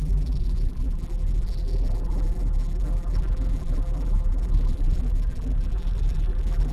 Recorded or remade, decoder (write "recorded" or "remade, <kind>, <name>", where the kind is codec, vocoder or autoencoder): remade, vocoder, BigVGAN v2